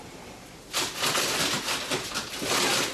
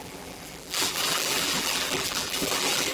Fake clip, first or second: second